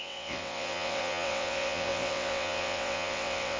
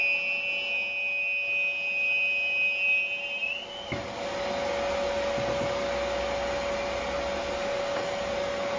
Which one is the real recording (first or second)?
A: second